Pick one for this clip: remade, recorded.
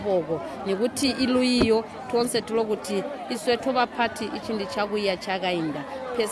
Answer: recorded